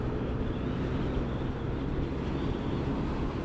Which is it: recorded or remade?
recorded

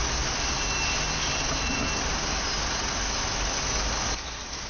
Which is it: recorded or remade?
recorded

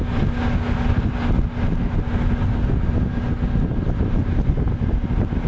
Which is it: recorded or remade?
recorded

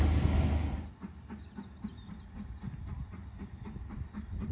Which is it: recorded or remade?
recorded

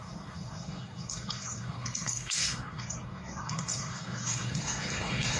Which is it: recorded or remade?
remade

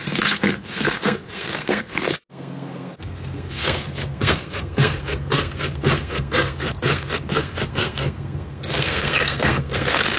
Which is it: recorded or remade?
remade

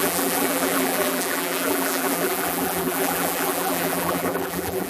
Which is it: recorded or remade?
remade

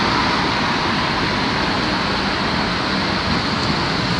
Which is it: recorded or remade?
recorded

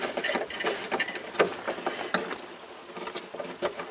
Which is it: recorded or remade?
recorded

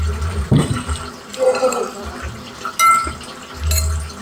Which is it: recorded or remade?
recorded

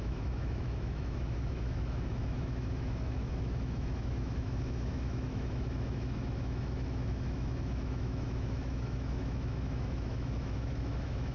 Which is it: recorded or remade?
remade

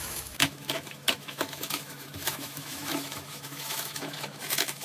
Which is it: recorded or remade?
remade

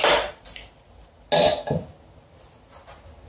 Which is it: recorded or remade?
recorded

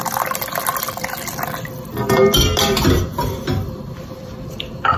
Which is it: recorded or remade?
recorded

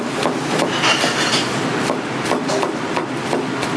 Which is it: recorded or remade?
recorded